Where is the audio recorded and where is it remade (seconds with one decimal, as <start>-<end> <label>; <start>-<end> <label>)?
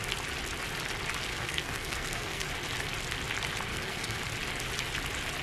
0.0-1.3 recorded; 1.3-2.5 remade; 2.5-3.7 recorded; 3.7-4.2 remade; 4.2-5.4 recorded